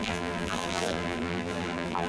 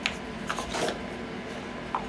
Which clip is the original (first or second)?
second